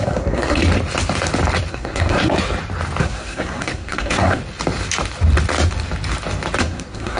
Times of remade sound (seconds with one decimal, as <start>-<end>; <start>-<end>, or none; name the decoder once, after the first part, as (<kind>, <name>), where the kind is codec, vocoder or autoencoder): 0.0-0.6 (codec, SNAC); 1.7-2.3; 3.0-4.4; 6.6-7.2